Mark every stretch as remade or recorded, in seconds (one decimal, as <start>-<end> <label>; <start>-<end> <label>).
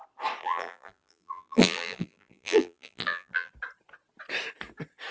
0.0-0.4 recorded; 0.4-3.5 remade; 3.5-5.1 recorded